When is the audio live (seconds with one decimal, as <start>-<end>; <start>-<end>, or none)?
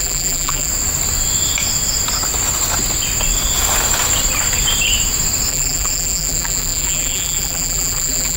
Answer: 0.7-5.5